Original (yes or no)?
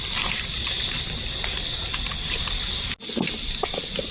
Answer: yes